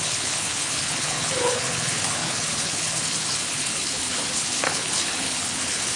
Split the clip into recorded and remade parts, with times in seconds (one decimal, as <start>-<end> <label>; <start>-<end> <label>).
0.0-6.0 remade